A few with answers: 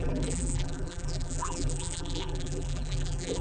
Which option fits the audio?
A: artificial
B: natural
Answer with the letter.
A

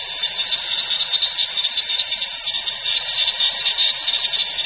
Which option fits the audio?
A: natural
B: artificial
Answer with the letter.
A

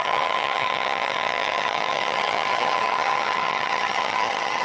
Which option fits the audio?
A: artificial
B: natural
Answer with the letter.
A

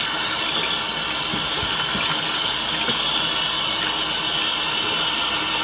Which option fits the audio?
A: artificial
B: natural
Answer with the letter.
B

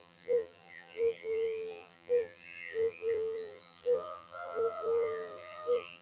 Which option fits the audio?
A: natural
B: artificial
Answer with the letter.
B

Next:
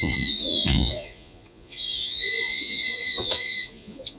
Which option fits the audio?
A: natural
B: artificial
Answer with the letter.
B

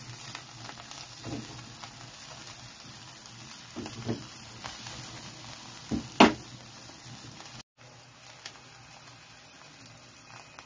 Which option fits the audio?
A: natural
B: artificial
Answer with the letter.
A